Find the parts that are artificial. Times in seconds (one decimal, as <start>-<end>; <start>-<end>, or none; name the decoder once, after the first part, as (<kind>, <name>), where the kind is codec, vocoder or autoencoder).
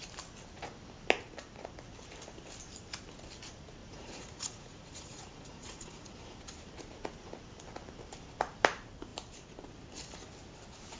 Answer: 3.8-6.1 (vocoder, Vocos)